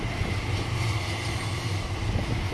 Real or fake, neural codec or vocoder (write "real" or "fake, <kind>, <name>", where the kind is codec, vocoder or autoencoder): real